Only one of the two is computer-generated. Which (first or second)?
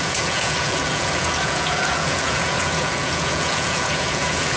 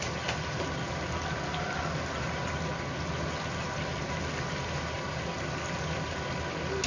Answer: first